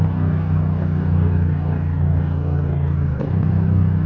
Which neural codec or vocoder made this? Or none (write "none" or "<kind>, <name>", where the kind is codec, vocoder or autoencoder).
codec, DAC